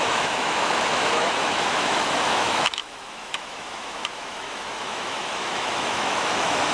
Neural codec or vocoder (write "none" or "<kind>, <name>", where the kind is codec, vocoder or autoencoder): autoencoder, DAC-VAE